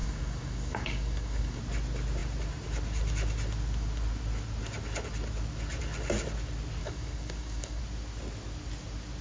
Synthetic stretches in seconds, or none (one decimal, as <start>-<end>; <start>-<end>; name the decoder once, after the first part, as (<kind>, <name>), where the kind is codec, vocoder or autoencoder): 0.0-1.6 (codec, DAC); 6.8-7.8